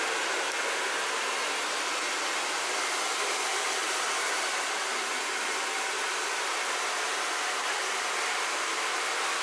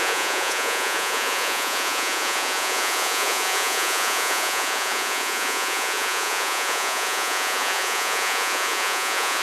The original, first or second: first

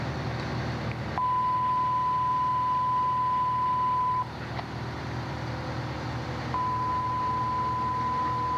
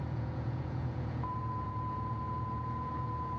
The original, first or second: first